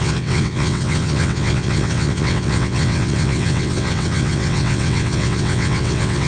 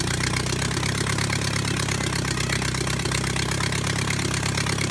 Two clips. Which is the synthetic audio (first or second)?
first